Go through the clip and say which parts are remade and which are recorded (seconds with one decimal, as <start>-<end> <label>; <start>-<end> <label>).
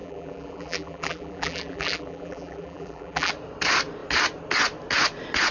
0.0-3.3 remade; 3.3-5.5 recorded